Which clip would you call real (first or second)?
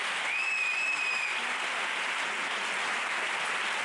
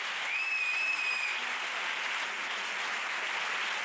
second